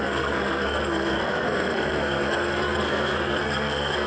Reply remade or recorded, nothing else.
remade